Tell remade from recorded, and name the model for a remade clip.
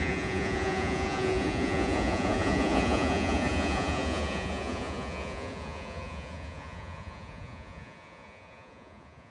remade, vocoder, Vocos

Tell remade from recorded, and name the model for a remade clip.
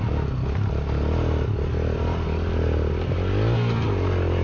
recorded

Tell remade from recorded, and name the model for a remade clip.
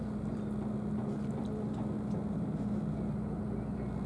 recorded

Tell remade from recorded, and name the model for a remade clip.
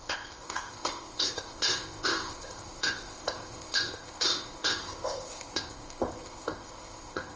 remade, codec, ZipCodec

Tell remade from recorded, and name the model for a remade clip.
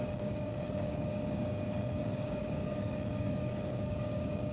remade, codec, DAC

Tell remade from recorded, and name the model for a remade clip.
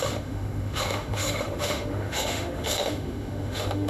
remade, autoencoder, DAC-VAE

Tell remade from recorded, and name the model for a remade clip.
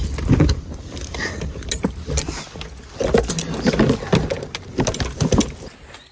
recorded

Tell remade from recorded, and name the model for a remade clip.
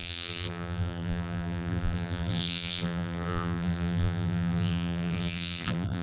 remade, vocoder, BigVGAN v2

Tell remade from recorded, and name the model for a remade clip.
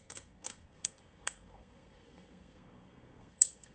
remade, codec, SNAC